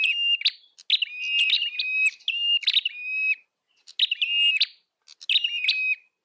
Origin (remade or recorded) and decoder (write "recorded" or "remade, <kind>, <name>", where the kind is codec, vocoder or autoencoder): recorded